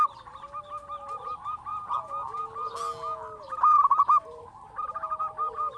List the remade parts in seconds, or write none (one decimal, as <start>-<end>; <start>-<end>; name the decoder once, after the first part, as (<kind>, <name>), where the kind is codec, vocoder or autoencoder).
none